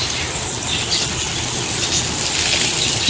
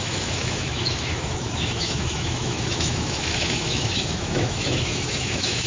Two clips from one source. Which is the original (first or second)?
first